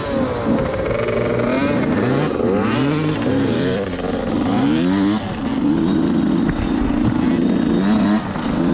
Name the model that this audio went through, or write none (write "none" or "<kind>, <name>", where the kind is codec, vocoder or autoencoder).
none